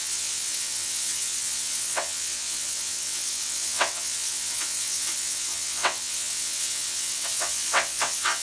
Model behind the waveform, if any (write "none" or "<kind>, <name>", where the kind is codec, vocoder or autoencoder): vocoder, WaveNeXt